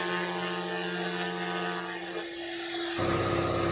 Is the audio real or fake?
real